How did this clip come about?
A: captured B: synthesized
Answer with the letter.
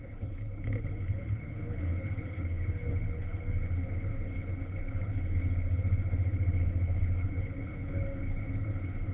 B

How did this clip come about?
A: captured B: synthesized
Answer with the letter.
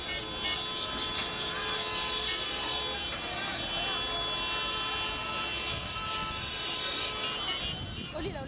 A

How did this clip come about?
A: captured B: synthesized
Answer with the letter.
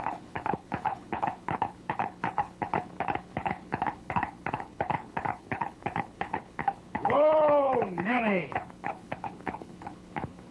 B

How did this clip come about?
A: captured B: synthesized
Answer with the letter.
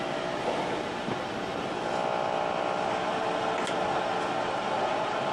A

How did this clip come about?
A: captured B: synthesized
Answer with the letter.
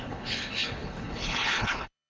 B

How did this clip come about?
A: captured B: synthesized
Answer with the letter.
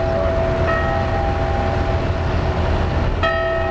A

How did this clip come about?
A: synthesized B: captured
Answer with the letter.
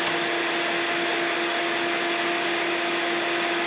B